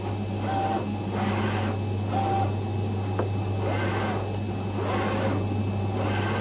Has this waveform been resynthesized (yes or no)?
no